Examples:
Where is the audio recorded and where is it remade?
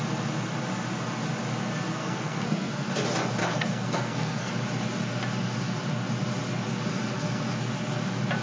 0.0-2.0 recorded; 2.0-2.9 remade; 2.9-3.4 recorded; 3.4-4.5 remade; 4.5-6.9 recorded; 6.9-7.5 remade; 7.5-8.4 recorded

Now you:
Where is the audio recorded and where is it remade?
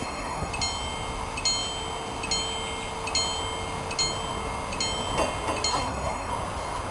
0.0-0.5 remade; 0.5-5.7 recorded; 5.7-6.3 remade; 6.3-6.9 recorded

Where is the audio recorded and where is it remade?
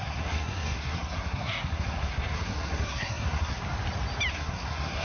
0.0-3.6 remade; 3.6-4.3 recorded; 4.3-5.0 remade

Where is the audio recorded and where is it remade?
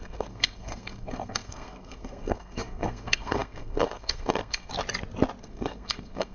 0.0-4.7 remade; 4.7-5.4 recorded; 5.4-6.3 remade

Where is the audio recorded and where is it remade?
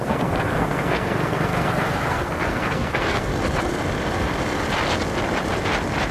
0.0-3.3 remade; 3.3-6.1 recorded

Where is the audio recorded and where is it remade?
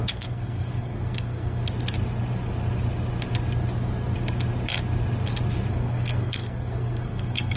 0.0-1.6 remade; 1.6-5.7 recorded; 5.7-7.6 remade